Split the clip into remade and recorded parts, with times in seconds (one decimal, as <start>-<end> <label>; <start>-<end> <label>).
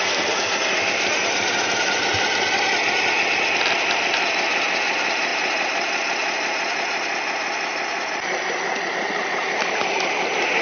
0.0-10.6 recorded